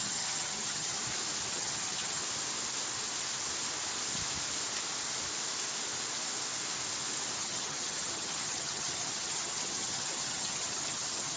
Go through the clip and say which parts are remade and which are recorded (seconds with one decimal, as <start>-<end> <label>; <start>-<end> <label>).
0.0-1.0 remade; 1.0-1.5 recorded; 1.5-2.2 remade; 2.2-7.4 recorded; 7.4-11.4 remade